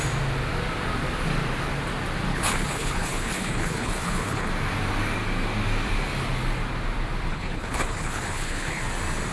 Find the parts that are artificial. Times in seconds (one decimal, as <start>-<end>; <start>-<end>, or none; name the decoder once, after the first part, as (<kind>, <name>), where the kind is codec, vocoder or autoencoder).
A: 2.3-4.5 (codec, HILCodec); 7.3-8.8